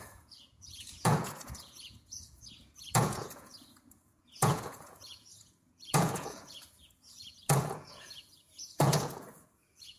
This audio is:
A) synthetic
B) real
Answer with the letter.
A